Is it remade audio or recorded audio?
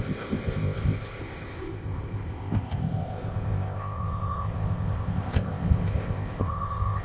remade